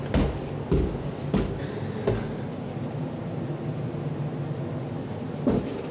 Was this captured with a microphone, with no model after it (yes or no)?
yes